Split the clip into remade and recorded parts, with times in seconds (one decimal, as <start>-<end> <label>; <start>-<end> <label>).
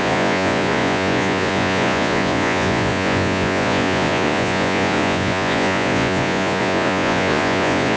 0.0-8.0 remade